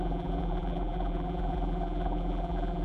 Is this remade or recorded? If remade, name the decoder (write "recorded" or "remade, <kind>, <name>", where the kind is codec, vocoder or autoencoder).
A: remade, vocoder, BigVGAN v2